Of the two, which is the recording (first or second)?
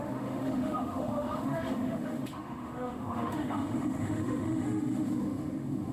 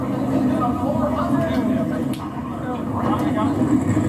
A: second